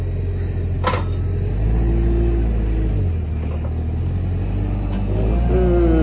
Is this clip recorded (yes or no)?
yes